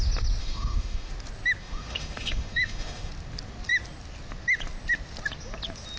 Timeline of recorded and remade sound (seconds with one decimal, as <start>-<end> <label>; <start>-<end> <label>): 0.0-0.4 recorded; 0.4-1.1 remade; 1.1-1.6 recorded; 1.6-3.1 remade; 3.1-6.0 recorded